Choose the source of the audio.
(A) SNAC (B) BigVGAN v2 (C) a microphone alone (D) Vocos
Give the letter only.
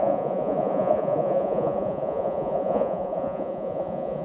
D